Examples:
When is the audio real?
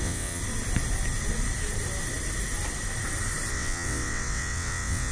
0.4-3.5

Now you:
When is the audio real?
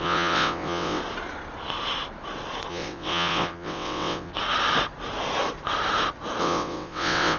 1.0-2.7; 4.3-6.4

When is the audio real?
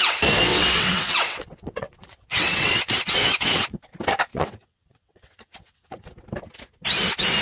0.0-0.5; 3.9-4.3; 6.1-7.4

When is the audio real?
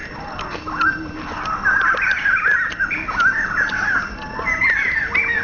0.0-5.4